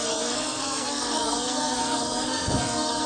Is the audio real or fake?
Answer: fake